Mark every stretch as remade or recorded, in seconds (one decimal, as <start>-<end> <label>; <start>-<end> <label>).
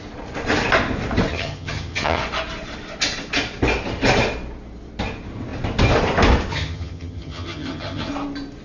0.0-1.3 recorded; 1.3-2.2 remade; 2.2-6.5 recorded; 6.5-8.1 remade; 8.1-8.6 recorded